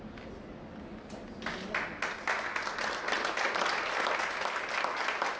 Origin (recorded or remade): recorded